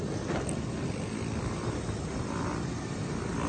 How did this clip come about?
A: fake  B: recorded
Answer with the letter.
B